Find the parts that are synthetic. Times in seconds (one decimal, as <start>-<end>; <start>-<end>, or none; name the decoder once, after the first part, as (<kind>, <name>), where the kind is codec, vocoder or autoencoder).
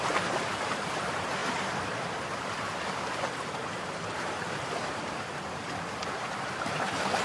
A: 0.0-7.2 (vocoder, BigVGAN v2)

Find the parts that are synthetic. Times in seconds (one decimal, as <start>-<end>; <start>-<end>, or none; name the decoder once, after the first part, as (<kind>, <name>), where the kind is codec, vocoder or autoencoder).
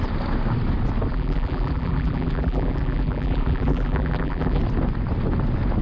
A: 1.1-4.6 (vocoder, BigVGAN v2)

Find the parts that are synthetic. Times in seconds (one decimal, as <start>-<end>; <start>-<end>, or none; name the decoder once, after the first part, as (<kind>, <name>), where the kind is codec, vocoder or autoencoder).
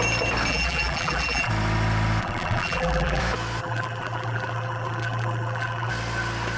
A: 0.5-1.5 (vocoder, BigVGAN v2); 2.2-3.2; 3.6-5.9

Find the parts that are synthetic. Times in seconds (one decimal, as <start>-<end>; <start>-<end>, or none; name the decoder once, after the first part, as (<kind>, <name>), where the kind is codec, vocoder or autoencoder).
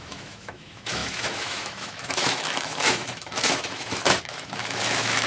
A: 0.0-5.3 (autoencoder, DAC-VAE)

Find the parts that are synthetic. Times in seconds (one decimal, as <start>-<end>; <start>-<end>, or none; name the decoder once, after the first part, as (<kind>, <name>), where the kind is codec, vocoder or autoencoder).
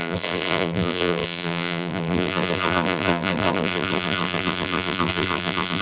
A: 0.0-5.8 (vocoder, BigVGAN v2)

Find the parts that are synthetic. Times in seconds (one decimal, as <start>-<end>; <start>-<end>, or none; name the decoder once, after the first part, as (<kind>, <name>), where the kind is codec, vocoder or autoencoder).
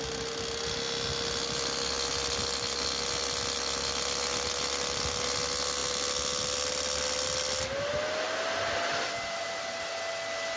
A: none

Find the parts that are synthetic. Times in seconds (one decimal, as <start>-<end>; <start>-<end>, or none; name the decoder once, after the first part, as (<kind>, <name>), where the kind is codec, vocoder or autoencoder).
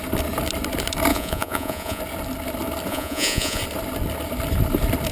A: 1.1-2.0 (vocoder, Vocos); 2.9-3.6